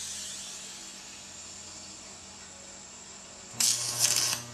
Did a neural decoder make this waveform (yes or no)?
no